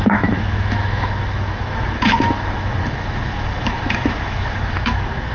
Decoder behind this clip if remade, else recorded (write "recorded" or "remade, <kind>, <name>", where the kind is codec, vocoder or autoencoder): remade, autoencoder, DAC-VAE